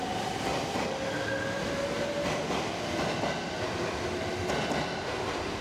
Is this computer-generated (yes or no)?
no